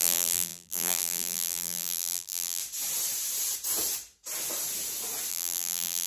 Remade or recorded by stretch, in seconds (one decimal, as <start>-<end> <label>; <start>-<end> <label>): 0.0-2.6 remade; 2.6-5.3 recorded; 5.3-6.1 remade